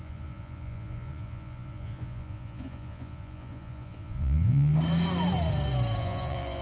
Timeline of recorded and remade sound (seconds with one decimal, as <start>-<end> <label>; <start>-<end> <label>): 0.0-4.7 remade; 4.7-6.0 recorded; 6.0-6.6 remade